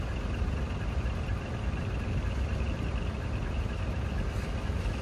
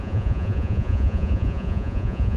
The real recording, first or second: first